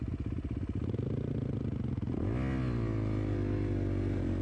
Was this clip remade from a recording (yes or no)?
no